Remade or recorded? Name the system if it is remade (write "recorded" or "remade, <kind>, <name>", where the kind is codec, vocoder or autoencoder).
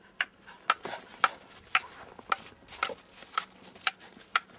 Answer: recorded